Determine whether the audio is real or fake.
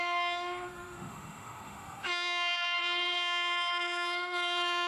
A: fake